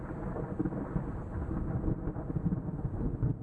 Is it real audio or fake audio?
real